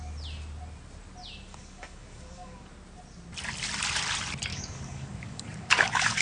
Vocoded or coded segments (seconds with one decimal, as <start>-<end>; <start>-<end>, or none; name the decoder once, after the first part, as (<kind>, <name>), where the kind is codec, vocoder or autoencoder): 1.5-2.7 (codec, DAC); 4.5-6.2